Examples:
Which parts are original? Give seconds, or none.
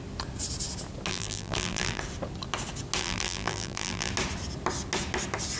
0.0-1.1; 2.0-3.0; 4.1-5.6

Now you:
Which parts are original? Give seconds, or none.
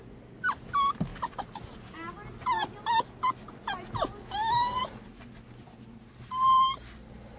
0.0-7.4